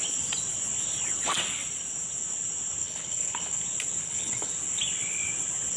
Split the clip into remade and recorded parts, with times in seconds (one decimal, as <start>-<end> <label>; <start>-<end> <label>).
0.0-2.8 recorded; 2.8-3.6 remade; 3.6-4.0 recorded; 4.0-4.5 remade; 4.5-5.8 recorded